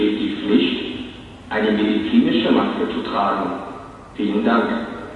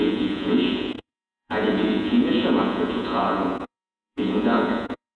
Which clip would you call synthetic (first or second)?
second